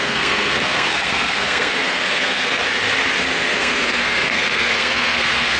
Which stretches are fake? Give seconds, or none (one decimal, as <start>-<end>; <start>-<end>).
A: 0.0-2.6; 3.2-5.6